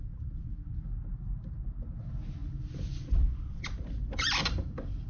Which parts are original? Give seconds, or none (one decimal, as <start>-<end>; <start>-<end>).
0.0-5.1